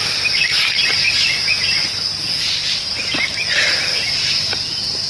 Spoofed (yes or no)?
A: no